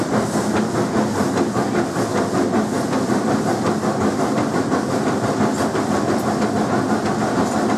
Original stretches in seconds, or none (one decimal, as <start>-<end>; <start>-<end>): 0.0-2.1; 6.5-7.8